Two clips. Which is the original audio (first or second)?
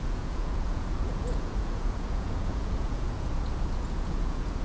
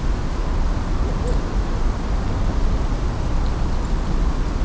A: second